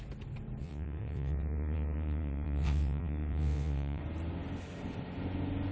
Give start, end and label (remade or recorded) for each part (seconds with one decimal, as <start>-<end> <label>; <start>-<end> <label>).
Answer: 0.0-0.6 recorded; 0.6-4.0 remade; 4.0-5.7 recorded